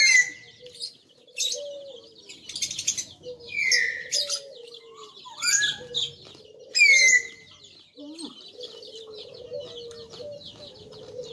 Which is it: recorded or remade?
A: recorded